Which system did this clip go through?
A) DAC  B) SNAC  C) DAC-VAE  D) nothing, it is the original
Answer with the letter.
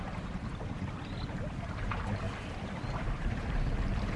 D